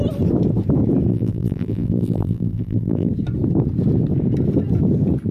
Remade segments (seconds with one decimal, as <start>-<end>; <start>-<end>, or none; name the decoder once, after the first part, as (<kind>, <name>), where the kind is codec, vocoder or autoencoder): 1.1-3.1 (vocoder, BigVGAN v2)